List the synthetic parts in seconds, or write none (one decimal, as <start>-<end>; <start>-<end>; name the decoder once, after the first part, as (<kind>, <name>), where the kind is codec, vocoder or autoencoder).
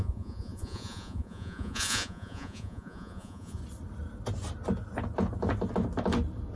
0.0-3.6 (vocoder, Vocos)